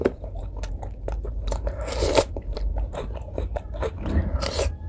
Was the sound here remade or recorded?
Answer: remade